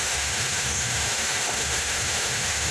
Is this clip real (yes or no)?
no